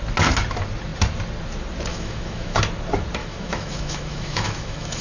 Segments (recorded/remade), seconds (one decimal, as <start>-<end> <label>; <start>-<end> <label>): 0.0-1.9 recorded; 1.9-2.6 remade; 2.6-3.2 recorded; 3.2-5.0 remade